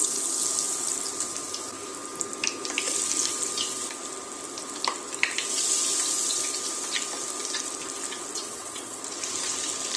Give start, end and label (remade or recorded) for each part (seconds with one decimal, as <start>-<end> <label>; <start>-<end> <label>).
0.0-8.3 recorded; 8.3-9.0 remade; 9.0-10.0 recorded